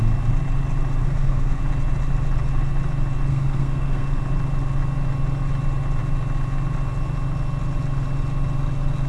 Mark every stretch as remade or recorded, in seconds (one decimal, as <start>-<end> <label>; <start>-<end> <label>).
0.0-1.0 recorded; 1.0-1.6 remade; 1.6-3.3 recorded; 3.3-4.2 remade; 4.2-9.1 recorded